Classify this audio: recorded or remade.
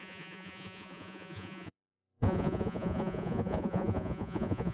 remade